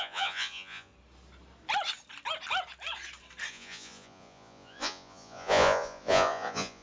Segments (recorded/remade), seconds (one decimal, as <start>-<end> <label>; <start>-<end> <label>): 0.0-0.9 remade; 0.9-3.5 recorded; 3.5-6.8 remade